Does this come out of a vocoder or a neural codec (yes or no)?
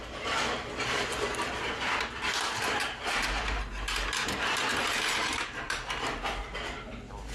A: no